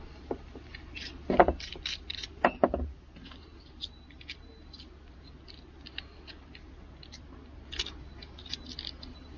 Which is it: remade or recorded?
recorded